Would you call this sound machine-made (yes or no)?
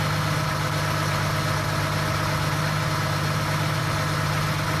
no